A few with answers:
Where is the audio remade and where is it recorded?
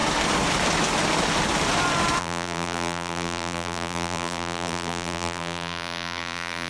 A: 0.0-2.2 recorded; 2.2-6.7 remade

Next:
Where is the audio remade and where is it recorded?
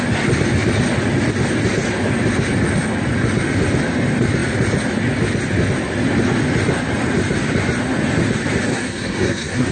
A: 0.0-8.7 recorded; 8.7-9.7 remade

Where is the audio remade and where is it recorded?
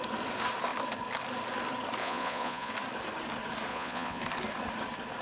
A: 0.0-2.0 recorded; 2.0-2.7 remade; 2.7-3.7 recorded; 3.7-4.2 remade; 4.2-5.2 recorded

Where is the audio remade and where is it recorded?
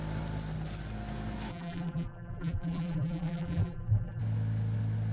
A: 0.0-1.5 recorded; 1.5-4.2 remade; 4.2-5.1 recorded